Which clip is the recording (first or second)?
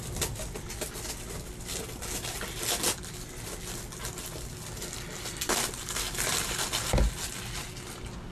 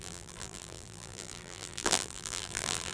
first